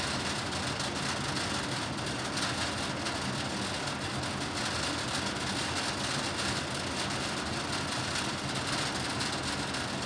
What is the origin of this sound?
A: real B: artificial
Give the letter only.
A